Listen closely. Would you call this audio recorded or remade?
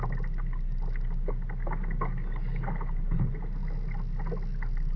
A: recorded